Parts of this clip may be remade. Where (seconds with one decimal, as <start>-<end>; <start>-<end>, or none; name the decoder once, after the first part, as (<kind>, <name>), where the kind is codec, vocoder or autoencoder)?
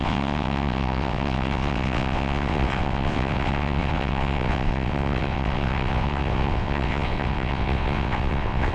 0.0-8.7 (vocoder, WaveNeXt)